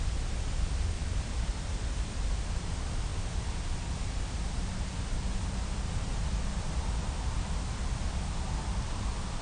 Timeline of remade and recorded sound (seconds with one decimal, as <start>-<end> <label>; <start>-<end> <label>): 0.0-9.4 recorded